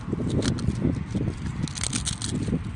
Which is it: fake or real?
real